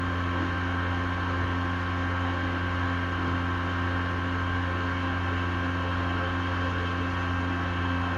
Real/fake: real